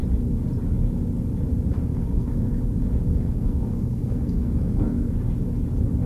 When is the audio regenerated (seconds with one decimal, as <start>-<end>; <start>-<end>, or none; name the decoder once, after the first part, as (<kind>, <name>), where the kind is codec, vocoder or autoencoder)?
1.9-2.6 (codec, SNAC); 3.1-5.1